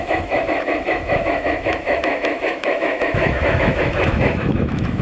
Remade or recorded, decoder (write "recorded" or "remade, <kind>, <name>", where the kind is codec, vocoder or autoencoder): remade, autoencoder, DAC-VAE